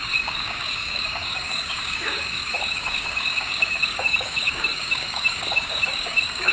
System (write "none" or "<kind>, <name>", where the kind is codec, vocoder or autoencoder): codec, DAC